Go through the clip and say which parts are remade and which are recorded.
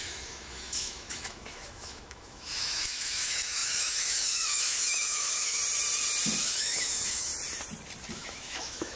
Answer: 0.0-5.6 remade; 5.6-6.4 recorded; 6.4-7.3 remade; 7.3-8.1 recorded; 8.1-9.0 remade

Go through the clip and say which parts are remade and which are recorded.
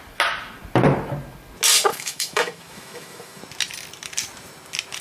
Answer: 0.0-1.9 recorded; 1.9-3.4 remade; 3.4-5.0 recorded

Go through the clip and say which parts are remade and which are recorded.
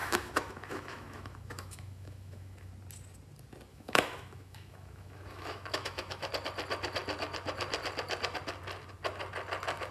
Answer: 0.0-2.7 remade; 2.7-3.7 recorded; 3.7-6.3 remade; 6.3-9.9 recorded